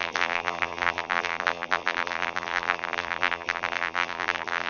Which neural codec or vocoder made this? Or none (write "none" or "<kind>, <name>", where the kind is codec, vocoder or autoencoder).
vocoder, BigVGAN v2